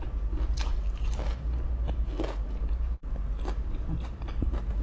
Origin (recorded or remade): recorded